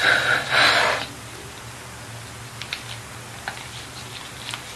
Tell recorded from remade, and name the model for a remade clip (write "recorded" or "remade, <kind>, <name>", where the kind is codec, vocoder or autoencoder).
recorded